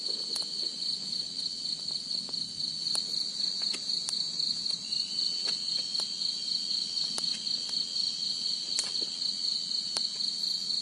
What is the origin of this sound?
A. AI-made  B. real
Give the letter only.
B